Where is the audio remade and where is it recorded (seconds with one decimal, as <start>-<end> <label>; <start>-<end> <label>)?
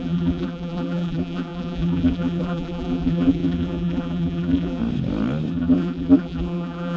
0.0-4.8 remade; 4.8-5.5 recorded; 5.5-7.0 remade